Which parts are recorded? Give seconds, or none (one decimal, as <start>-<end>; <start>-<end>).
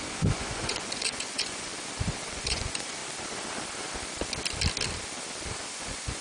1.7-2.3; 3.0-5.7